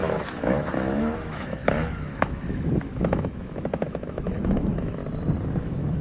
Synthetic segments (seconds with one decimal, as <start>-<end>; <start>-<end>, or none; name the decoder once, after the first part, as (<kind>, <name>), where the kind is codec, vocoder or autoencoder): 0.0-5.0 (autoencoder, DAC-VAE); 5.6-6.0